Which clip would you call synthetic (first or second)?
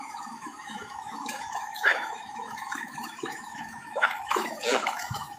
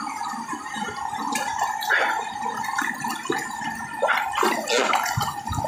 first